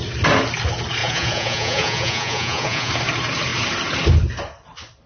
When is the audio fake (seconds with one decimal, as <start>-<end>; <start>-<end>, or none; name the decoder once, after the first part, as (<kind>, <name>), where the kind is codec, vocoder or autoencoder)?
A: 1.0-2.9 (vocoder, Vocos)

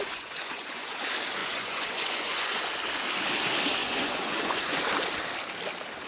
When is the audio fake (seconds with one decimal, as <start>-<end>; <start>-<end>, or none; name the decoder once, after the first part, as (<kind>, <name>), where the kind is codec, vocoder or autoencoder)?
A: 0.0-0.9 (vocoder, Vocos); 1.4-2.7; 3.8-4.8

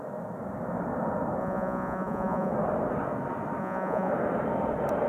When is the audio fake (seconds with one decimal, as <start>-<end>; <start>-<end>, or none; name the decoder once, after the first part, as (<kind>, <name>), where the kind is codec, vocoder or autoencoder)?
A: 1.4-2.5 (vocoder, Vocos); 3.6-4.1